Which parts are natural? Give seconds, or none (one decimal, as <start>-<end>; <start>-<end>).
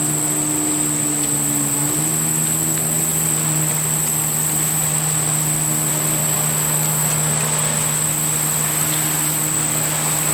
0.0-10.3